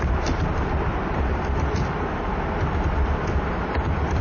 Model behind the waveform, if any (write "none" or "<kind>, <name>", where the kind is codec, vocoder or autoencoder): none